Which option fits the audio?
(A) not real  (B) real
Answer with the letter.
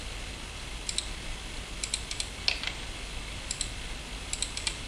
B